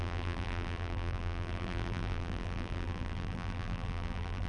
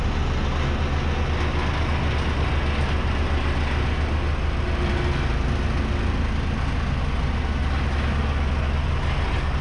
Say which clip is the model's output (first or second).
first